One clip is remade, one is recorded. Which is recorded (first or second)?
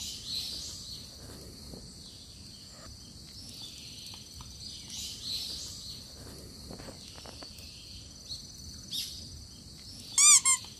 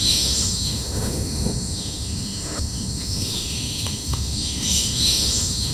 first